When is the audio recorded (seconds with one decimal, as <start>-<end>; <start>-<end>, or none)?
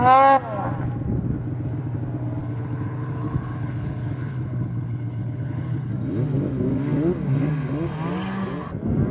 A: 0.0-2.4; 5.9-9.1